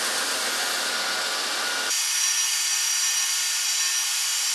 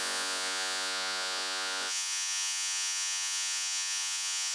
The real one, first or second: first